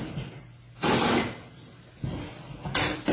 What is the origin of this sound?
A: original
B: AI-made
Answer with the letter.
B